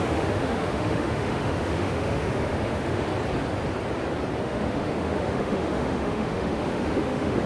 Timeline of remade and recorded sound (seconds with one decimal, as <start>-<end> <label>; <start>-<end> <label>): 0.0-3.1 remade; 3.1-4.4 recorded; 4.4-7.5 remade